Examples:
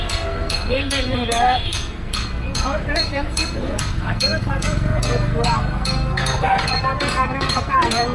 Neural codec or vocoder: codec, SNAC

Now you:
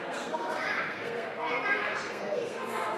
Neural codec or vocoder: codec, SNAC